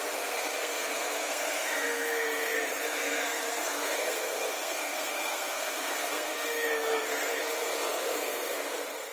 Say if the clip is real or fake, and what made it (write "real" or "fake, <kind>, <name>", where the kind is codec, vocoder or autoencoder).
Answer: fake, codec, SNAC